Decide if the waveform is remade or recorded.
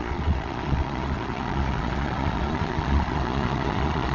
remade